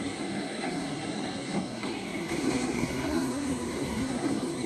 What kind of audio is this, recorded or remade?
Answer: remade